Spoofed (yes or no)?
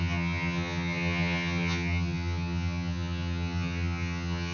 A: yes